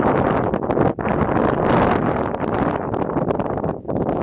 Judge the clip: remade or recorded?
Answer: recorded